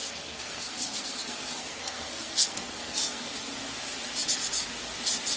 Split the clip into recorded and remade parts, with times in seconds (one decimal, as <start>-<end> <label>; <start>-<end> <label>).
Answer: 0.0-3.2 remade; 3.2-5.4 recorded